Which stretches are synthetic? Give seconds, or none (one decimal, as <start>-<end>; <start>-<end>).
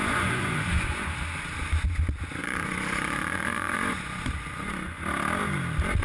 0.0-1.1; 2.4-5.0